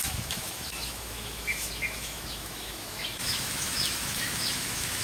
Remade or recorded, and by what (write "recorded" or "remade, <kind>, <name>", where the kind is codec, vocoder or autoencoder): remade, autoencoder, DAC-VAE